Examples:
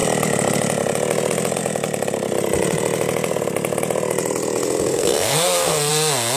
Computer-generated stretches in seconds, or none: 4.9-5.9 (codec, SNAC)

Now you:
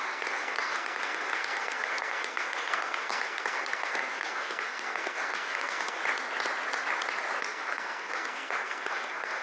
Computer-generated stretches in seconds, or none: 0.0-6.0 (codec, SNAC); 7.4-9.4

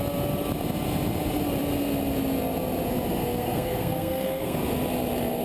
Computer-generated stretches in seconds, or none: 3.2-4.6 (codec, SNAC)